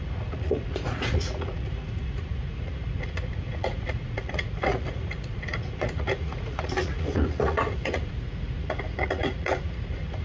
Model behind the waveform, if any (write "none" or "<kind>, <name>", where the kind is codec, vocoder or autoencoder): vocoder, Vocos